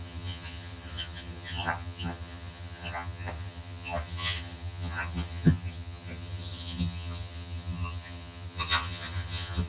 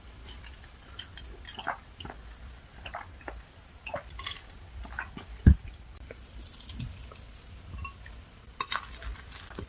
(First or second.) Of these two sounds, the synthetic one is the first